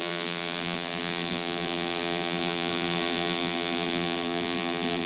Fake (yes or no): yes